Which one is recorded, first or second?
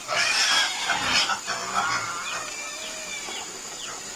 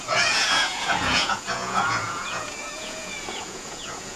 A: first